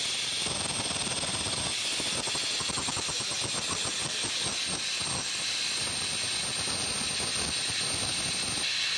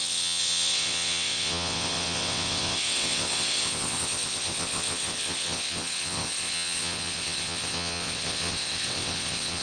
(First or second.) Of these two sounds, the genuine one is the first